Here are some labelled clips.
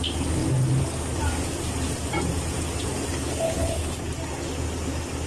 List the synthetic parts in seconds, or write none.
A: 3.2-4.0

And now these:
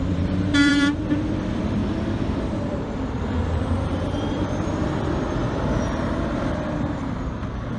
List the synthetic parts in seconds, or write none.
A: 0.0-1.8; 2.4-7.8

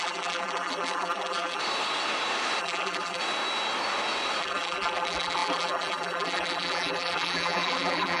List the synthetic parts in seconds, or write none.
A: 0.0-1.6; 2.6-3.2; 4.4-8.2

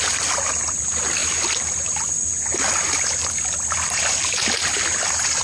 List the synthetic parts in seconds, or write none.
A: none